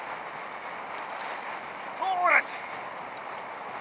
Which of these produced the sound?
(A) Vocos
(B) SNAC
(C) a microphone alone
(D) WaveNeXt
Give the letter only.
C